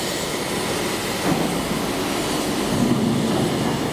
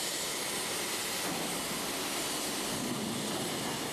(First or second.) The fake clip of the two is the second